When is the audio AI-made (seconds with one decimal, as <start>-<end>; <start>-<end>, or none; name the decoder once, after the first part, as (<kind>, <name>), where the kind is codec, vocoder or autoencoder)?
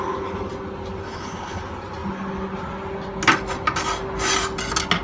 1.0-1.6 (codec, HILCodec)